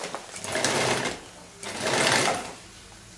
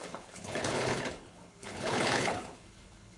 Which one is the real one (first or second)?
first